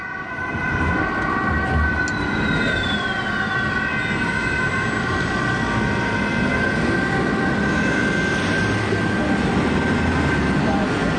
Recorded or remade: recorded